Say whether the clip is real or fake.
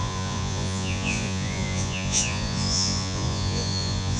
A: fake